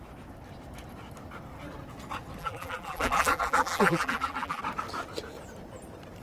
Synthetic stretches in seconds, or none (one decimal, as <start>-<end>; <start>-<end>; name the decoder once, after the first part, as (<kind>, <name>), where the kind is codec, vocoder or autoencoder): 2.4-4.6 (vocoder, BigVGAN v2)